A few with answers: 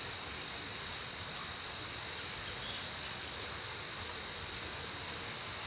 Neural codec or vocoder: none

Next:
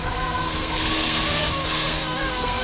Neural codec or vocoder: codec, SNAC